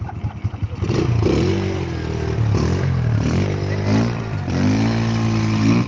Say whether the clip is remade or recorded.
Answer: recorded